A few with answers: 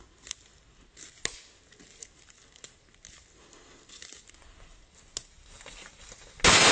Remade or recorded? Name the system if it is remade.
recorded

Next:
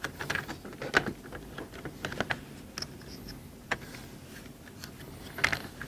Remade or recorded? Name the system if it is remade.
recorded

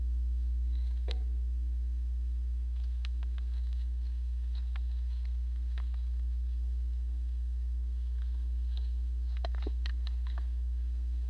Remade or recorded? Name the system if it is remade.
remade, codec, SNAC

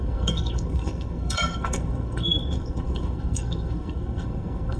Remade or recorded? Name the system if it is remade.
remade, codec, SNAC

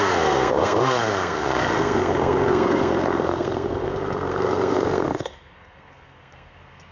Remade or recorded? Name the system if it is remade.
remade, codec, SNAC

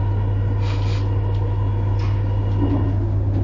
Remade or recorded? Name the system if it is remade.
recorded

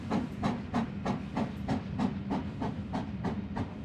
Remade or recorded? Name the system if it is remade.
recorded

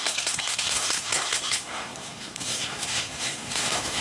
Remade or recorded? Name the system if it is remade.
remade, codec, SNAC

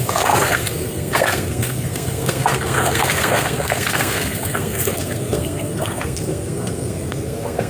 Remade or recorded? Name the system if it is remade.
remade, codec, SNAC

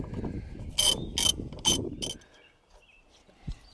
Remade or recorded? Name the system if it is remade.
recorded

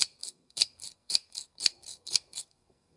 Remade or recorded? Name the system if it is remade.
remade, codec, SNAC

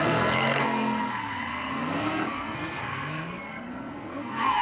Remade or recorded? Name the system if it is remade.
remade, codec, SNAC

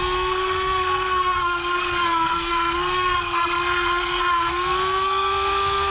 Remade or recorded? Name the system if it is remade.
remade, codec, SNAC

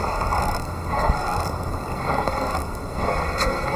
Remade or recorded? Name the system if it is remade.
remade, codec, SNAC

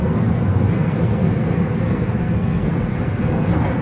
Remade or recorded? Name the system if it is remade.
remade, codec, SNAC